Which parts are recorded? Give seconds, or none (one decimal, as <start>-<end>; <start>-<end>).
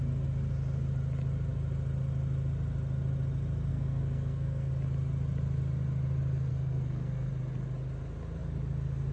0.0-3.7; 4.7-6.5; 7.3-9.1